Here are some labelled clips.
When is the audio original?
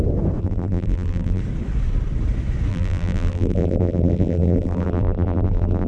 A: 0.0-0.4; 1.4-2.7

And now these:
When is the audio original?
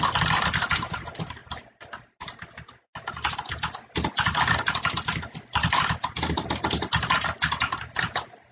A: 0.0-8.5